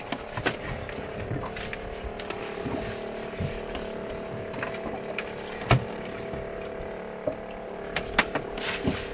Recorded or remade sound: recorded